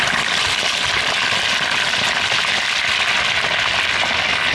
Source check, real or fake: real